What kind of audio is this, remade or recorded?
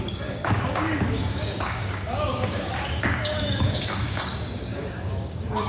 remade